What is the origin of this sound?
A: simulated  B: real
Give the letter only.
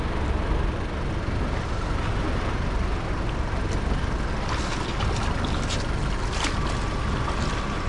B